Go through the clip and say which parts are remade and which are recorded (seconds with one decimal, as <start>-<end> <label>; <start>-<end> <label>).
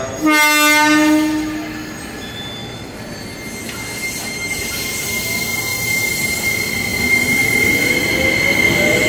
0.0-2.6 recorded; 2.6-3.3 remade; 3.3-5.7 recorded; 5.7-6.4 remade; 6.4-6.9 recorded; 6.9-8.1 remade; 8.1-9.1 recorded